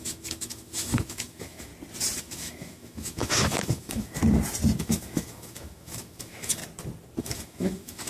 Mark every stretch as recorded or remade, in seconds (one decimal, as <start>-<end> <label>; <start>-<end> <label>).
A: 0.0-1.7 remade; 1.7-2.2 recorded; 2.2-4.2 remade; 4.2-4.8 recorded; 4.8-6.6 remade; 6.6-7.2 recorded; 7.2-8.1 remade